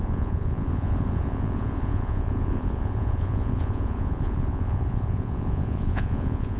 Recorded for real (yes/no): no